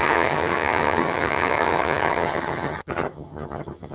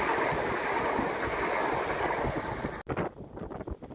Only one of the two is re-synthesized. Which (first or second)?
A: first